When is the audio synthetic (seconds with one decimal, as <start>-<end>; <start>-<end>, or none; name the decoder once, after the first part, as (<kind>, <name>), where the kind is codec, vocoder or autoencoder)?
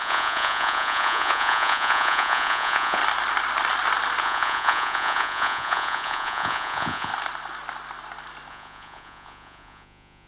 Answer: 0.0-3.0 (vocoder, Vocos); 4.2-7.1; 8.5-10.3